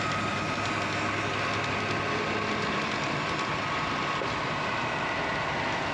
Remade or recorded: recorded